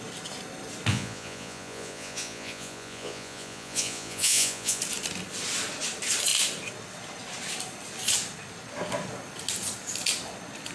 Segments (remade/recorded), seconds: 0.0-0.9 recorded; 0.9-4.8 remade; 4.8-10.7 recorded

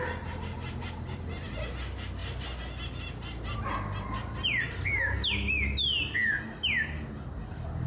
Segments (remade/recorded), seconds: 0.0-7.9 recorded

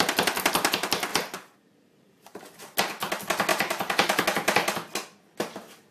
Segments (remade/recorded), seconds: 0.0-1.1 recorded; 1.1-2.4 remade; 2.4-3.5 recorded; 3.5-4.2 remade; 4.2-5.9 recorded